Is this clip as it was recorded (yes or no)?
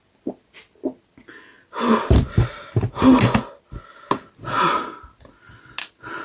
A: yes